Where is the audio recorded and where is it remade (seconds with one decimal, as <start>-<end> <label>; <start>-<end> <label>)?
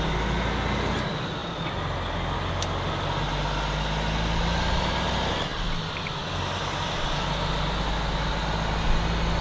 0.0-9.4 recorded